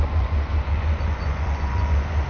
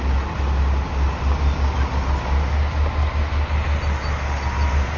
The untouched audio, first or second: second